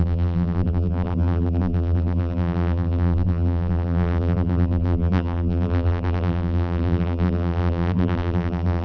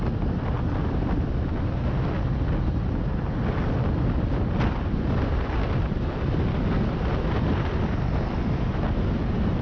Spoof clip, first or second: first